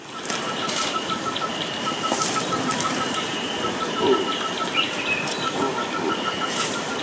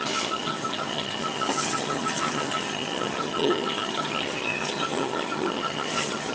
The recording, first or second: first